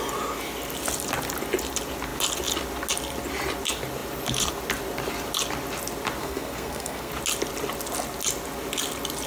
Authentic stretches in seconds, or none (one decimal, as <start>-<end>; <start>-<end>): 0.0-6.2; 7.1-9.3